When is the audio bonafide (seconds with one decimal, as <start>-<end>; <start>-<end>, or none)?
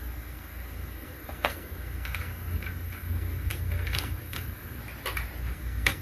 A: 4.8-5.4